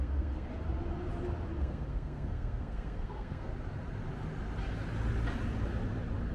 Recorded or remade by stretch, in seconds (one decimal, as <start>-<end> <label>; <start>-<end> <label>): 0.0-0.5 remade; 0.5-1.6 recorded; 1.6-3.5 remade; 3.5-6.3 recorded